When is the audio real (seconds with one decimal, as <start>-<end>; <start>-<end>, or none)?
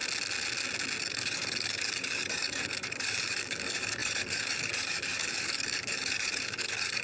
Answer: 0.0-1.0